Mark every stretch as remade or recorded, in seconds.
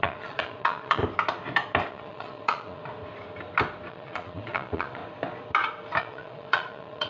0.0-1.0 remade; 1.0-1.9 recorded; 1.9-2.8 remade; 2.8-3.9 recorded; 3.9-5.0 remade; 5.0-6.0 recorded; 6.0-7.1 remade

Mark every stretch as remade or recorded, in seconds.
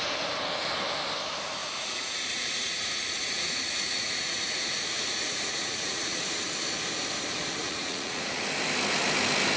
0.0-1.6 recorded; 1.6-6.2 remade; 6.2-7.6 recorded; 7.6-8.4 remade; 8.4-9.6 recorded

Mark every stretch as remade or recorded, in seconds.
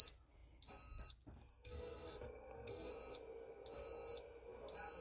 0.0-1.5 recorded; 1.5-2.9 remade; 2.9-5.0 recorded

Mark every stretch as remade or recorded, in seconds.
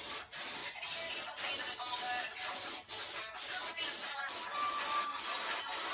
0.0-5.9 recorded